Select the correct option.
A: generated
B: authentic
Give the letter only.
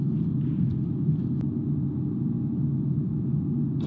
B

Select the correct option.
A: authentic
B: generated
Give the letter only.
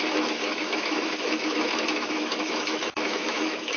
B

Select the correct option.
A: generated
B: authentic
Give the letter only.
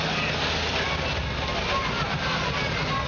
B